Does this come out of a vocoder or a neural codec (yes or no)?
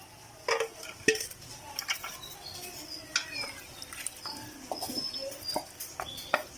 no